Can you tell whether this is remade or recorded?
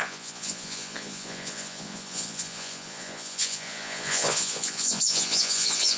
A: remade